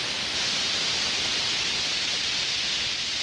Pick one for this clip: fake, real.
real